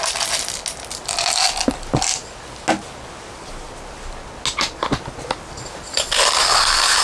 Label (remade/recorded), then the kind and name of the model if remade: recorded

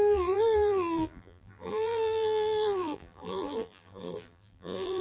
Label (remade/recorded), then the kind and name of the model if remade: remade, vocoder, BigVGAN v2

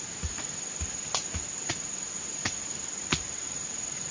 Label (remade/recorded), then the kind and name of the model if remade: remade, vocoder, BigVGAN v2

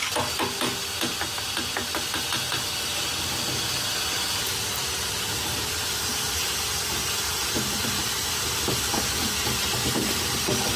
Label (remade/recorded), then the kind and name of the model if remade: recorded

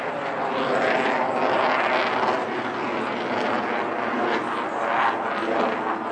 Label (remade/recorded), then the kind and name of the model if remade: recorded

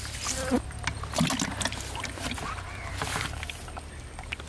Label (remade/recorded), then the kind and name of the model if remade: recorded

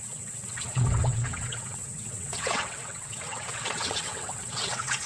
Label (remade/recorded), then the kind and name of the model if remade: remade, vocoder, WaveNeXt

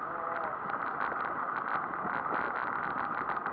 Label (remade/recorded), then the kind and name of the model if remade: recorded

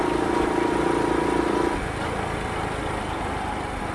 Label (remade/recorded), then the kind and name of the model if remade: recorded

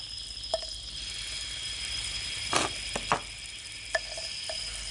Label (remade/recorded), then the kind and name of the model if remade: recorded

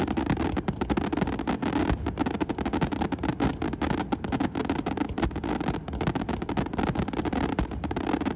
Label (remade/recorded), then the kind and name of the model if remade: recorded